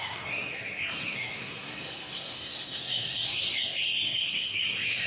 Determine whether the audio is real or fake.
fake